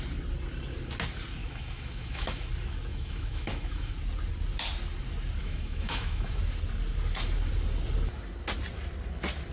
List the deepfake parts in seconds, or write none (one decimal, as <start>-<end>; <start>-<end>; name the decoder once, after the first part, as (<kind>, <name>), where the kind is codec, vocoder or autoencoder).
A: 1.4-2.5 (autoencoder, DAC-VAE); 2.9-3.9; 5.4-6.4